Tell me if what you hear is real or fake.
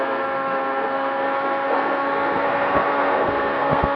fake